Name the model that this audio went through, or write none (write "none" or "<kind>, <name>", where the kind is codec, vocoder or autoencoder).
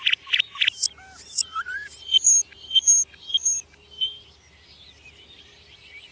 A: none